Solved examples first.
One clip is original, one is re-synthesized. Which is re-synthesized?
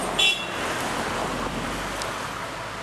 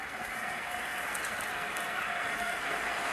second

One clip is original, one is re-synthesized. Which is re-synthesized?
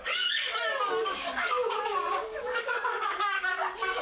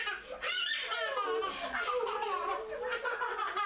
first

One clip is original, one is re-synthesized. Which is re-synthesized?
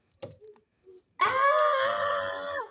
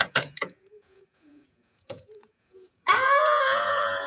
second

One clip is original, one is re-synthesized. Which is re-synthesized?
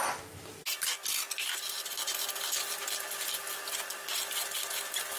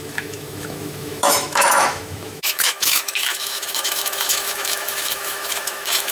second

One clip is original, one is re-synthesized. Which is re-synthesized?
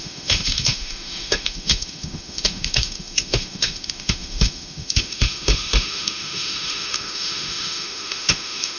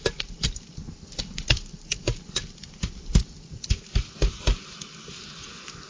first